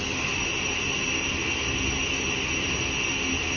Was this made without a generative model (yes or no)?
yes